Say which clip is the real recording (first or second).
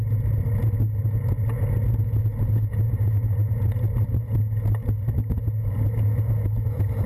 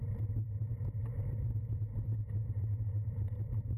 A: first